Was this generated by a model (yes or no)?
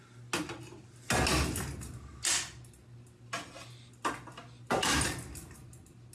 no